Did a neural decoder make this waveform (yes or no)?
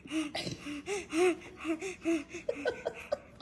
no